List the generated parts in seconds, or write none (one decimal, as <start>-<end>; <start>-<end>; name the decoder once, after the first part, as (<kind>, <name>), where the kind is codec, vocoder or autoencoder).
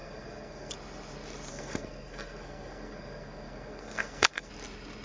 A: 0.0-0.7 (codec, SNAC); 1.5-4.5